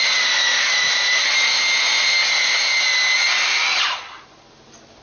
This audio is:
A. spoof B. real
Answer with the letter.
B